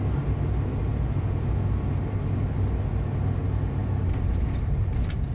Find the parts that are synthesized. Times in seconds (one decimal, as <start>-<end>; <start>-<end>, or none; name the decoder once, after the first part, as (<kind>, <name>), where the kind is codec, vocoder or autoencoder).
3.8-5.3 (vocoder, BigVGAN v2)